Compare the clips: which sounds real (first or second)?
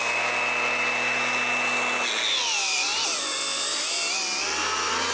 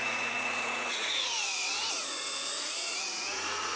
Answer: first